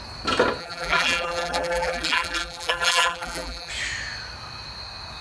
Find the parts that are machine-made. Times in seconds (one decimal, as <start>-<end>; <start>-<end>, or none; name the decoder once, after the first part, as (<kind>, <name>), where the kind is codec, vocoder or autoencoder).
0.6-3.7 (vocoder, BigVGAN v2)

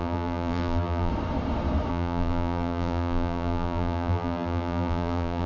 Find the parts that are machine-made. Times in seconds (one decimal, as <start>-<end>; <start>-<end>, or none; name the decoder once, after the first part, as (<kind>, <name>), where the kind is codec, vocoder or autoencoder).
0.0-1.1 (vocoder, BigVGAN v2); 1.9-5.5

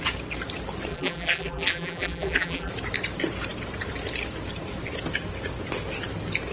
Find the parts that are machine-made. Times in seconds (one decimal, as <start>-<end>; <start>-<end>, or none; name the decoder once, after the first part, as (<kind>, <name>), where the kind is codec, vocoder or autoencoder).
0.9-2.7 (vocoder, BigVGAN v2)

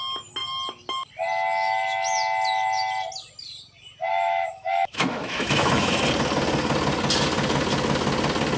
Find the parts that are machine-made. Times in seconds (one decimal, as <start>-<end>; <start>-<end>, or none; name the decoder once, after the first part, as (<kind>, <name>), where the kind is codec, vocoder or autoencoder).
4.1-6.0 (autoencoder, DAC-VAE)

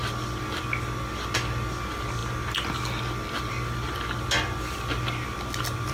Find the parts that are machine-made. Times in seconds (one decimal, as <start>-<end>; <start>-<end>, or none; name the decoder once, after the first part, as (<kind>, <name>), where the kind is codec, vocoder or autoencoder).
none